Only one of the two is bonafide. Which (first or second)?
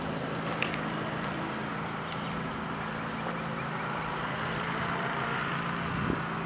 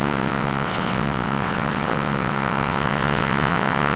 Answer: first